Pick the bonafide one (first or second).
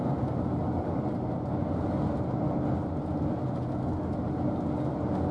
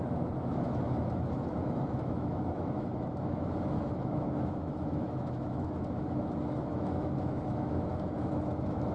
first